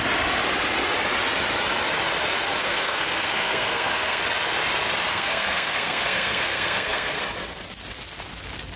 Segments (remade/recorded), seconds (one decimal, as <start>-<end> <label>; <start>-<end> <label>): 0.0-2.6 recorded; 2.6-4.2 remade; 4.2-5.1 recorded; 5.1-7.2 remade; 7.2-8.8 recorded